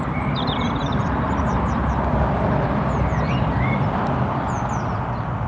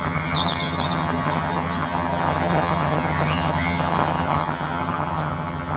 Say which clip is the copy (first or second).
second